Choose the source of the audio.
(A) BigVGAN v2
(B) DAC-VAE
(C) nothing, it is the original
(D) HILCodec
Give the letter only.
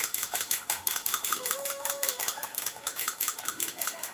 B